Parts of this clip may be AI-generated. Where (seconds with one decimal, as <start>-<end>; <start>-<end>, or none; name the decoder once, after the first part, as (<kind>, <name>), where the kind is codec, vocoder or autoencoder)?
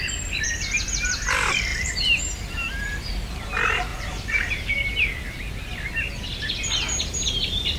1.7-2.2 (vocoder, BigVGAN v2)